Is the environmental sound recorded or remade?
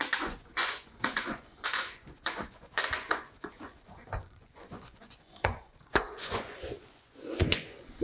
remade